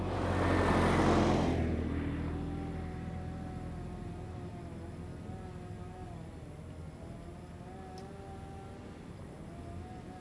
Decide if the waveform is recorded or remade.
recorded